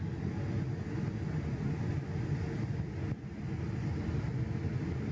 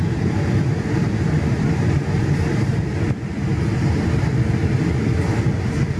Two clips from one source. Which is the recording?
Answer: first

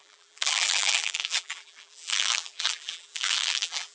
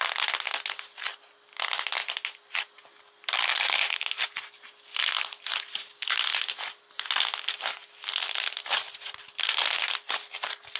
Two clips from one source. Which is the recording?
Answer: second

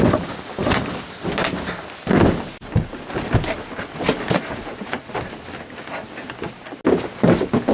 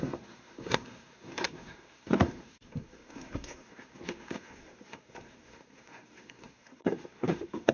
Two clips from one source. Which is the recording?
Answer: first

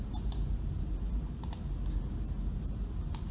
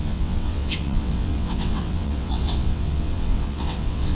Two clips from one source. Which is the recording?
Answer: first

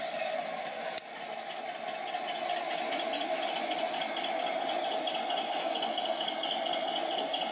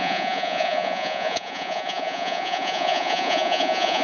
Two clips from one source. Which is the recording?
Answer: first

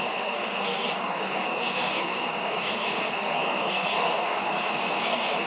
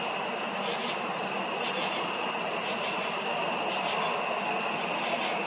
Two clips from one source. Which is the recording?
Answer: second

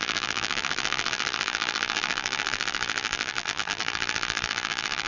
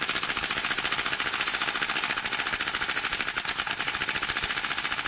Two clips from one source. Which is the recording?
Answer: second